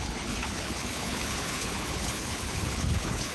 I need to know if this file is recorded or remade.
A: remade